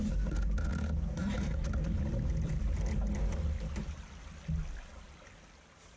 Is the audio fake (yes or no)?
no